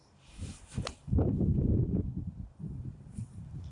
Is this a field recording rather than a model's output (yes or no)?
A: no